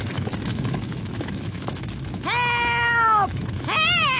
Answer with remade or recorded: remade